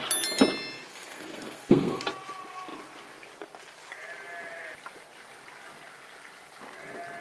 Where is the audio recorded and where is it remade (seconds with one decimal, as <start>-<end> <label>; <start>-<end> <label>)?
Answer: 0.0-0.9 recorded; 0.9-2.0 remade; 2.0-7.2 recorded